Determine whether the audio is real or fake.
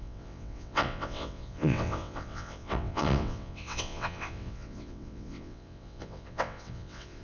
fake